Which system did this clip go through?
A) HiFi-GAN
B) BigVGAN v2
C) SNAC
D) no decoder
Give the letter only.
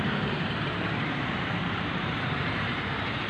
B